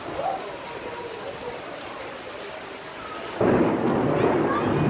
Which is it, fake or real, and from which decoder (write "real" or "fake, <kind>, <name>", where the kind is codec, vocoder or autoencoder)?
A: real